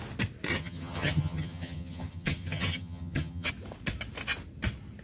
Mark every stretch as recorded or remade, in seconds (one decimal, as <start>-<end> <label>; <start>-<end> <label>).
0.0-0.5 recorded; 0.5-3.5 remade; 3.5-5.0 recorded